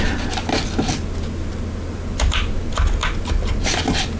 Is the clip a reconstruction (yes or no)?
no